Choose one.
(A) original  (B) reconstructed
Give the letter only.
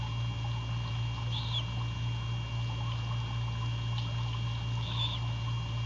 A